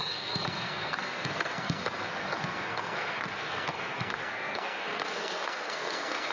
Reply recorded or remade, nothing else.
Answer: remade